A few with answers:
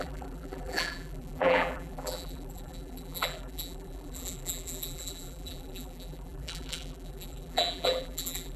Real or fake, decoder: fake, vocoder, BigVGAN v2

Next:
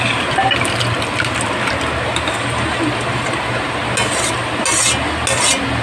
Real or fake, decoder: real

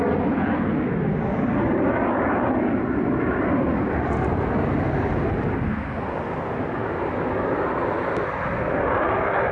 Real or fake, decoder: real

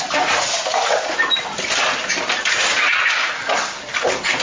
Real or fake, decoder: real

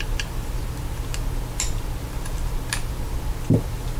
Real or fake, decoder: real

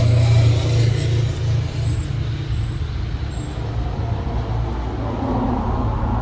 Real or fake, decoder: real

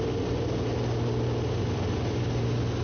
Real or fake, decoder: real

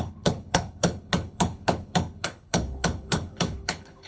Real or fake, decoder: fake, codec, HILCodec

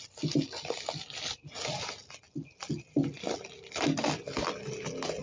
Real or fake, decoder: real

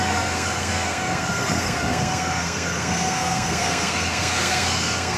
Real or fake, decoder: fake, codec, SNAC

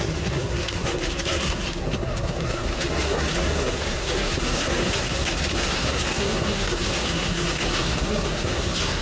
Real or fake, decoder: fake, codec, SNAC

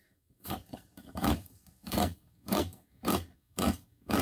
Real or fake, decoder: fake, codec, SNAC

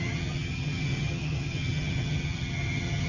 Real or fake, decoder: fake, vocoder, HiFi-GAN